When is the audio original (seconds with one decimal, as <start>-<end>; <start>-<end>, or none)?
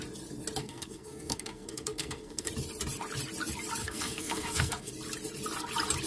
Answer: 0.0-0.6; 2.5-3.8; 4.9-6.1